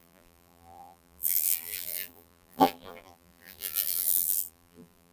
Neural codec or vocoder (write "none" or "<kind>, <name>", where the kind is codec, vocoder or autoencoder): vocoder, BigVGAN v2